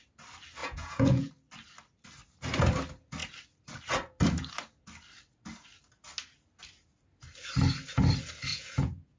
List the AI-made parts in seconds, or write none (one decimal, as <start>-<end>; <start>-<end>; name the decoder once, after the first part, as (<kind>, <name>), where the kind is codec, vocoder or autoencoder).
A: 0.6-1.3 (vocoder, Vocos); 8.5-9.2